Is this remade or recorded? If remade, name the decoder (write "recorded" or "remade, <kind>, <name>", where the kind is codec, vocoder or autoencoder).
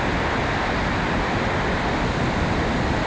recorded